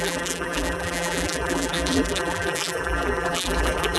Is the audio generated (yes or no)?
yes